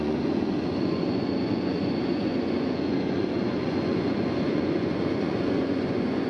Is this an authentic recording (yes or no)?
no